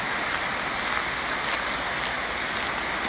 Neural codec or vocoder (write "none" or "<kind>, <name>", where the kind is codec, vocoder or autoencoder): none